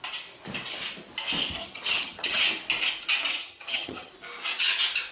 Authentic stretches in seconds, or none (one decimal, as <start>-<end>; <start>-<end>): 0.0-1.6; 2.4-3.4; 4.1-5.1